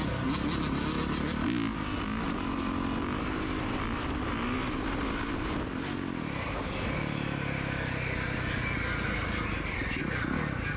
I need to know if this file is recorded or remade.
recorded